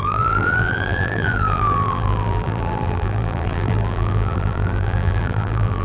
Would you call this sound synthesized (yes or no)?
yes